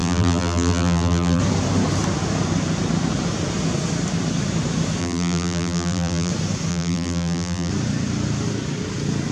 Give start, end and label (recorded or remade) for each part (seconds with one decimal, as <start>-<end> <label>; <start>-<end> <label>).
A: 0.0-1.4 remade; 1.4-5.0 recorded; 5.0-6.3 remade; 6.3-6.7 recorded; 6.7-7.7 remade; 7.7-9.3 recorded